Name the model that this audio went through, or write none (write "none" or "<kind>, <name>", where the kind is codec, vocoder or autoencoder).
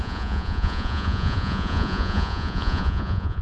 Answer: vocoder, Vocos